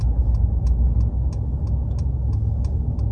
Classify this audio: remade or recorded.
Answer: recorded